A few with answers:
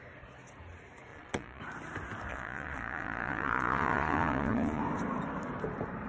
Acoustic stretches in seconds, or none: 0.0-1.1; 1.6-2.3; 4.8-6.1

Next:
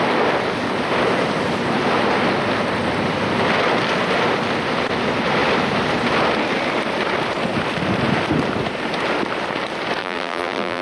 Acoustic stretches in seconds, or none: 0.0-10.0

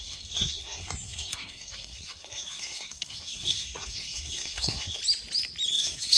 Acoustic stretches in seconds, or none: 5.0-5.7